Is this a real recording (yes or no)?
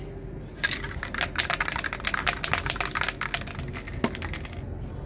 yes